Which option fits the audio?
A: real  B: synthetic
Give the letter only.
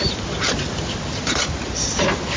B